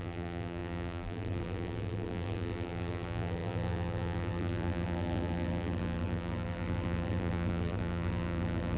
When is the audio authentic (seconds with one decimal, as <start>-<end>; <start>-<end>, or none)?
none